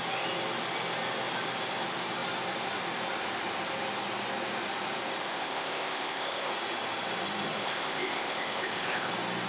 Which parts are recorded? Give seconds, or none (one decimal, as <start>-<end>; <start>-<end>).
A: 0.0-5.3; 6.5-7.6; 9.1-9.5

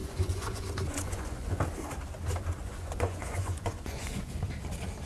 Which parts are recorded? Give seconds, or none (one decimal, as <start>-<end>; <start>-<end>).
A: 1.6-2.6; 4.3-5.1

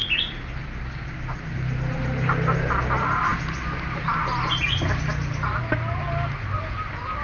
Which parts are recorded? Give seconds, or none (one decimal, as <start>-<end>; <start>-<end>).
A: 0.0-7.2

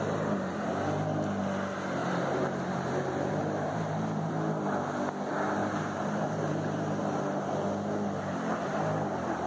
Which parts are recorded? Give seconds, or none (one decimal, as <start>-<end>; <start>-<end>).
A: 0.0-2.0; 4.3-5.6; 7.2-9.5

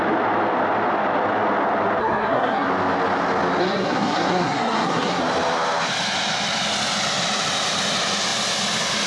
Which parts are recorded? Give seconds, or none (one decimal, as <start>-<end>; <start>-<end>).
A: 0.0-2.0; 2.7-3.6; 5.2-9.1

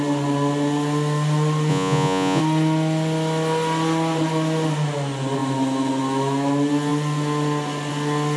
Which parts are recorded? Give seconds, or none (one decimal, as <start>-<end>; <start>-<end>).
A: 0.0-1.7; 2.4-8.4

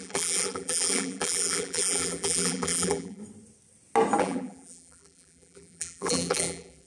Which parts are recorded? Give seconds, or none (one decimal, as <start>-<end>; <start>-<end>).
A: 3.2-4.2

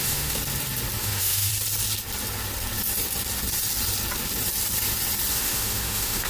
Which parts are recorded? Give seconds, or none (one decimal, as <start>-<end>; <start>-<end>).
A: 0.4-1.0; 1.5-5.3